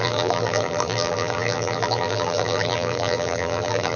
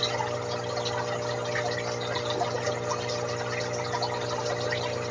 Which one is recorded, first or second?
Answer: second